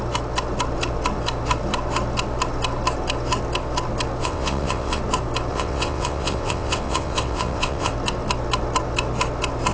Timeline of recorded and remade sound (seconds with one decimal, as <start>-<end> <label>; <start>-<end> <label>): 0.0-4.2 recorded; 4.2-5.0 remade; 5.0-5.5 recorded; 5.5-7.9 remade; 7.9-9.7 recorded

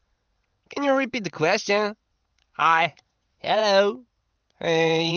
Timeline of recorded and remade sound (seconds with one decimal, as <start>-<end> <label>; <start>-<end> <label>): 0.0-3.6 remade; 3.6-4.2 recorded; 4.2-5.2 remade